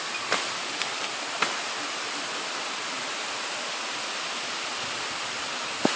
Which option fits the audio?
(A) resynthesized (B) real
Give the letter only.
B